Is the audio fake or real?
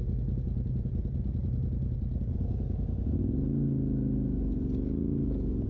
real